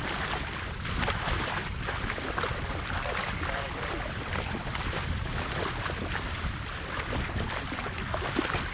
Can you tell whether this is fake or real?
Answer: real